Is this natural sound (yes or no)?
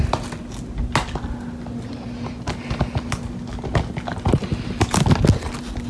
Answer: yes